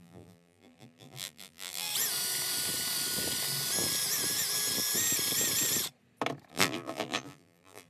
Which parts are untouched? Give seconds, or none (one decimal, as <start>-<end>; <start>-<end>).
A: 1.9-6.5